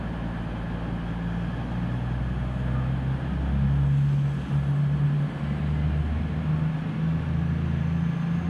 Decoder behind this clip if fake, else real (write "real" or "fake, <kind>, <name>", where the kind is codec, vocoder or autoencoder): real